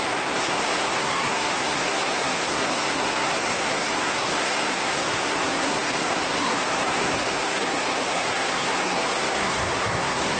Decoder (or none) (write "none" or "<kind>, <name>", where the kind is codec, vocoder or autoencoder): codec, SNAC